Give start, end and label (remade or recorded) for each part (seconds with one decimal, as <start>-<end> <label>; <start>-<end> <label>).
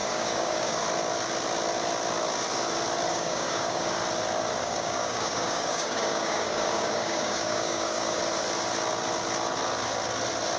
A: 0.0-0.8 remade; 0.8-3.1 recorded; 3.1-3.8 remade; 3.8-4.6 recorded; 4.6-8.2 remade; 8.2-10.6 recorded